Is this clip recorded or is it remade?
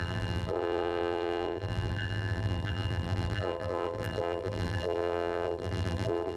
remade